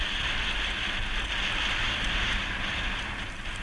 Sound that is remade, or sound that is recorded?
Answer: recorded